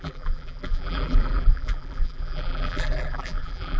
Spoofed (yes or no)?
yes